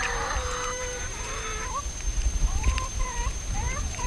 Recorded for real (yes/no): no